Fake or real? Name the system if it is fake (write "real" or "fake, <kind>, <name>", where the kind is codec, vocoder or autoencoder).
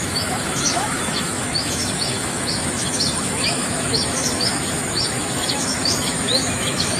fake, autoencoder, DAC-VAE